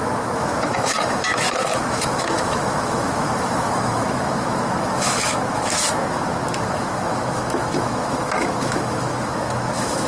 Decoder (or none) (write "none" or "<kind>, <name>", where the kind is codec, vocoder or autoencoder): autoencoder, DAC-VAE